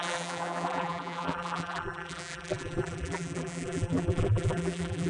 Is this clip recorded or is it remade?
remade